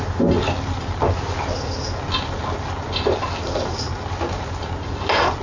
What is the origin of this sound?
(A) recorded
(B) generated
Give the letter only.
A